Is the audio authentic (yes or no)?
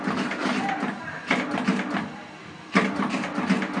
yes